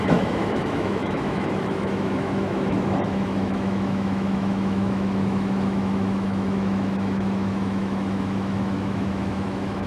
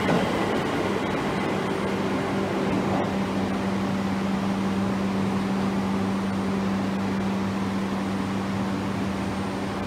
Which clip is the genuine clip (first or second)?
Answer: second